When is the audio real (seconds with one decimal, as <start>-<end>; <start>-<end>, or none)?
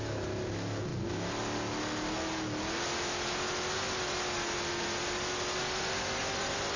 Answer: 0.0-6.8